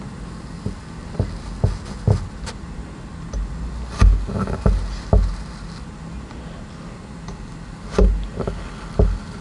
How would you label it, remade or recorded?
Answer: recorded